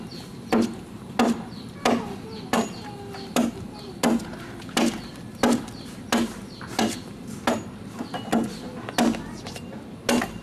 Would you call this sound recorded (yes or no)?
yes